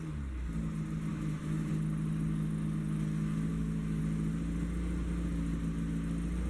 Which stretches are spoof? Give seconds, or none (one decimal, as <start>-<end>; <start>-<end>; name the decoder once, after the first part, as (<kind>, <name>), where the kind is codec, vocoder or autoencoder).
1.1-1.7 (autoencoder, DAC-VAE); 3.5-4.0